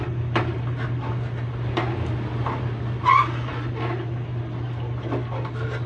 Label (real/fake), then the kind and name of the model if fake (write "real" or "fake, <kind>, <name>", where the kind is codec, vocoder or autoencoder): fake, vocoder, BigVGAN v2